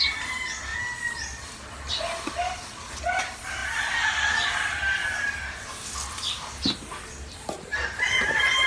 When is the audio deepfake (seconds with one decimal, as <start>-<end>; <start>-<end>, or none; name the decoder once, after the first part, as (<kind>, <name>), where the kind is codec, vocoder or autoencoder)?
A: none